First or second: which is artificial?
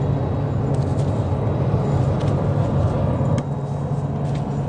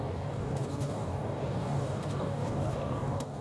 second